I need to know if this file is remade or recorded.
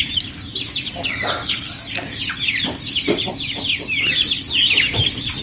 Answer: recorded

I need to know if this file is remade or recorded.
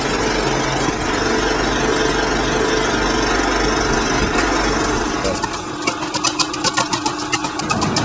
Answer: recorded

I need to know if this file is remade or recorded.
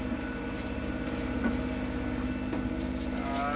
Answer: recorded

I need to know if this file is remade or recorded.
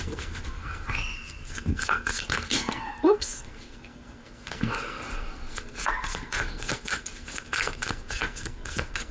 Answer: remade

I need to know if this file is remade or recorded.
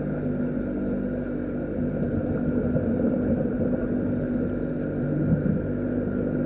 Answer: recorded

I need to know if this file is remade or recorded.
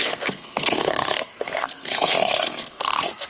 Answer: remade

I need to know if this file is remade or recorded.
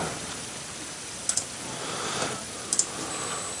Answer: recorded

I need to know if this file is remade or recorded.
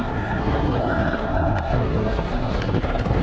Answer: remade